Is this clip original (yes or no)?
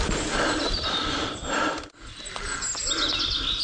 yes